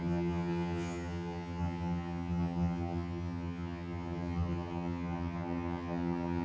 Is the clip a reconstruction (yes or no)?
yes